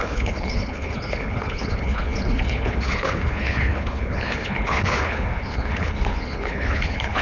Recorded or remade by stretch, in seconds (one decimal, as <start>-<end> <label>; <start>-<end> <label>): 0.0-7.2 remade